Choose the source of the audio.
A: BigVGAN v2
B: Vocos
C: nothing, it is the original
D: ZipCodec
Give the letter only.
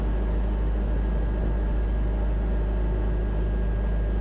C